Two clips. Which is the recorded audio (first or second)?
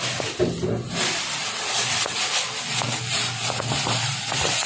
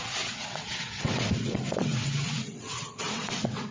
first